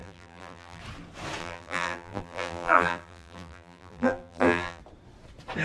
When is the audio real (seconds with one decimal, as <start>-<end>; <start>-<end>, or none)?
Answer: 0.8-1.4; 4.8-5.6